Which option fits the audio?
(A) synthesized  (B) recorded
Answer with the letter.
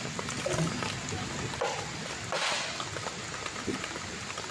B